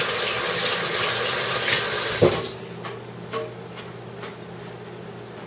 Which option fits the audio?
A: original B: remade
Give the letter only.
A